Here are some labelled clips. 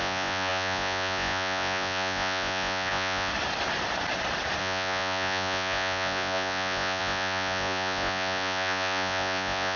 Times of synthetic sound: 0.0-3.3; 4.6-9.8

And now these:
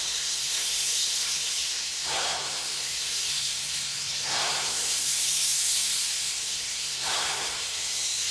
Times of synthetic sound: 0.0-8.3

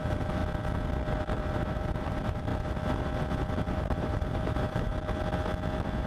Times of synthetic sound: 0.0-0.4; 1.2-2.5; 3.7-4.9